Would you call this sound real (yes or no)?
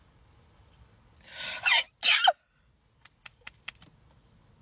yes